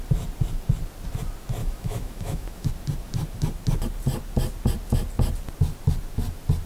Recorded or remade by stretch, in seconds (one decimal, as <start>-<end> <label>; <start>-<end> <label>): 0.0-1.6 recorded; 1.6-2.7 remade; 2.7-6.7 recorded